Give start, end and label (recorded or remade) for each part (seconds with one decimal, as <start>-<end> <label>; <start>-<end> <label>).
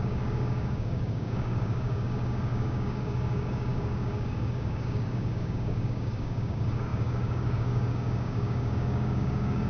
0.0-9.7 remade